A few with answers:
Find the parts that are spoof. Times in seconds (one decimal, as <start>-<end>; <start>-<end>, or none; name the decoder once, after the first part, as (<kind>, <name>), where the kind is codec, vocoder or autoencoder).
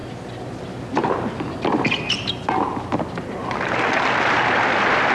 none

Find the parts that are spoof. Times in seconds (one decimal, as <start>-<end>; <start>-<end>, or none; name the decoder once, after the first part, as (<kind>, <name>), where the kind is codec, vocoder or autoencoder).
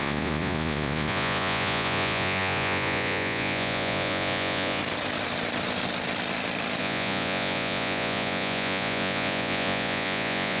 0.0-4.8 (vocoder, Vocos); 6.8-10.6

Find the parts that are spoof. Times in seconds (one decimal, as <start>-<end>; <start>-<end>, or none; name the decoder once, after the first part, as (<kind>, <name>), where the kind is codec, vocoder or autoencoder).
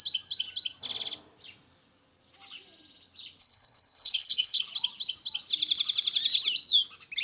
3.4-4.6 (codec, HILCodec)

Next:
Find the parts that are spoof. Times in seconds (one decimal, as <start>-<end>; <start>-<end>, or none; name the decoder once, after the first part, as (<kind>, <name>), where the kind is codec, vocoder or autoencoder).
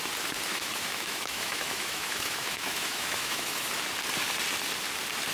0.5-3.7 (autoencoder, DAC-VAE)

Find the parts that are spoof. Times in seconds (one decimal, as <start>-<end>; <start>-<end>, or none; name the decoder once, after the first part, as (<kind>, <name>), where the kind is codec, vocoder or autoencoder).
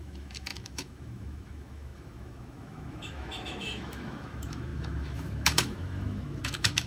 0.0-6.9 (autoencoder, DAC-VAE)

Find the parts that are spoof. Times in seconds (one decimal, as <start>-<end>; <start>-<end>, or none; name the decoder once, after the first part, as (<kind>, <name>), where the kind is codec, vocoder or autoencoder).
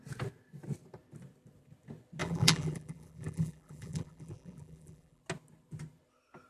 2.2-5.2 (vocoder, BigVGAN v2)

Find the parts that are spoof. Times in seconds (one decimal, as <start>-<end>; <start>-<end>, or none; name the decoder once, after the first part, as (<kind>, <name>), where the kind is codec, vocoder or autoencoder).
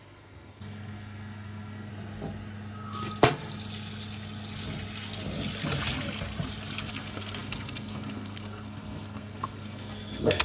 0.0-1.9 (codec, SNAC); 6.9-10.4